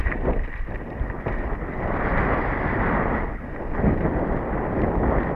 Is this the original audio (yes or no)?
yes